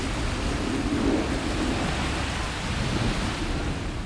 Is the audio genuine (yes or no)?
yes